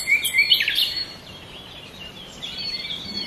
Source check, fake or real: fake